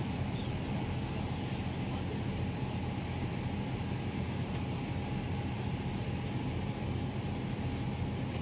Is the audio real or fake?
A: real